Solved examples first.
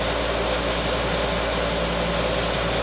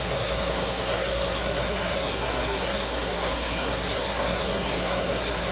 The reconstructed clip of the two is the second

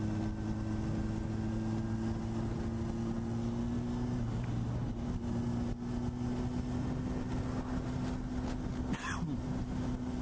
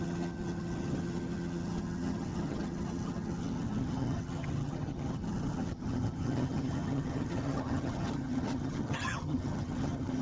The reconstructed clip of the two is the second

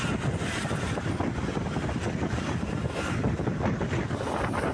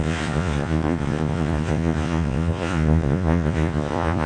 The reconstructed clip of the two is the second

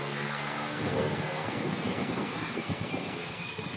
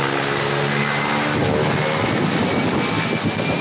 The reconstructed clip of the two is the first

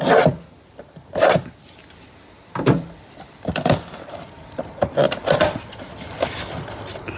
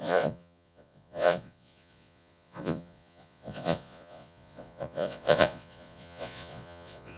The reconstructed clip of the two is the second